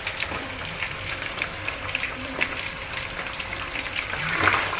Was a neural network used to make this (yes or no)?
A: yes